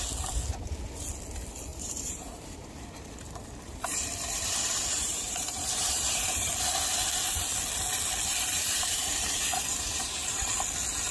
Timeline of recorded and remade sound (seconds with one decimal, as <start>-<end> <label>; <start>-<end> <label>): 0.0-1.7 recorded; 1.7-6.5 remade; 6.5-8.2 recorded; 8.2-10.4 remade; 10.4-11.1 recorded

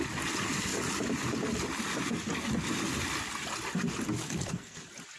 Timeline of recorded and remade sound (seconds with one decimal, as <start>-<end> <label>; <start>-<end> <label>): 0.0-4.2 recorded; 4.2-4.8 remade; 4.8-5.2 recorded

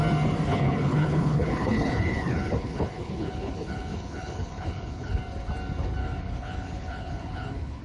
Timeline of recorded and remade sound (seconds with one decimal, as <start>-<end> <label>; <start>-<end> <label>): 0.0-0.5 recorded; 0.5-5.2 remade; 5.2-6.0 recorded; 6.0-7.8 remade